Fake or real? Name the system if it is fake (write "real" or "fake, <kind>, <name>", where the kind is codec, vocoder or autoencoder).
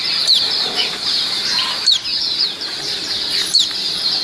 fake, vocoder, BigVGAN v2